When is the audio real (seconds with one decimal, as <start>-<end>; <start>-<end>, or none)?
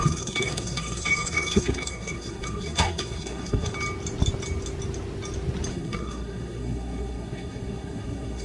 3.7-5.7